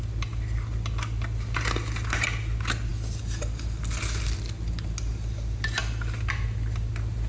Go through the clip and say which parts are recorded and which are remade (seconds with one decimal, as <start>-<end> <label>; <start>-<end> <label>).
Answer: 0.0-7.3 recorded